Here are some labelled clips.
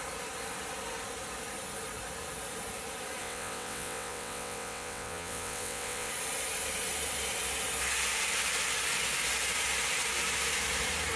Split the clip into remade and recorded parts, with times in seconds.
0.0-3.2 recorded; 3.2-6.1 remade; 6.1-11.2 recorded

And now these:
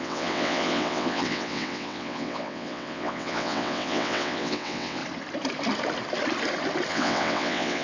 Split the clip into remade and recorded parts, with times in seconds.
0.0-5.0 remade; 5.0-6.9 recorded; 6.9-7.8 remade

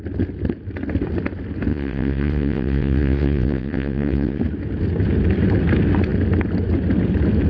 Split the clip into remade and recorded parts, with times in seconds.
0.0-1.7 recorded; 1.7-4.4 remade; 4.4-7.5 recorded

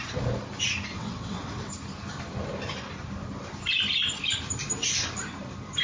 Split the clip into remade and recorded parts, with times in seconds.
0.0-0.9 recorded; 0.9-1.7 remade; 1.7-5.8 recorded

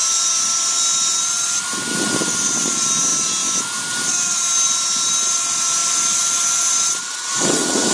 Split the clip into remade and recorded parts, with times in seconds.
0.0-7.0 recorded; 7.0-7.9 remade

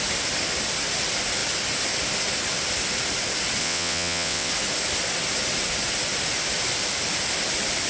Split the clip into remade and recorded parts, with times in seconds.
0.0-3.6 recorded; 3.6-4.5 remade; 4.5-7.9 recorded

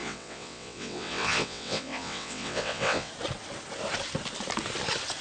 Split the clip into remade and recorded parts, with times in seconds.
0.0-3.1 remade; 3.1-5.2 recorded

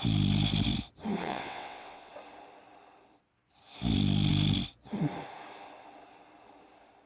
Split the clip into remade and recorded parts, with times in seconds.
0.0-1.2 recorded; 1.2-2.1 remade; 2.1-7.1 recorded